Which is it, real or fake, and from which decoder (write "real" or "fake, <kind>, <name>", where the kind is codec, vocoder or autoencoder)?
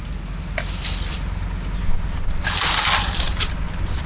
real